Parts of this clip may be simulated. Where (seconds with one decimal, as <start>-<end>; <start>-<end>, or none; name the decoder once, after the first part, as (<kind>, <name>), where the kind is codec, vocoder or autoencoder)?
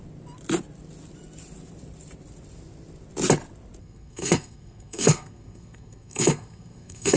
3.8-7.2 (codec, SNAC)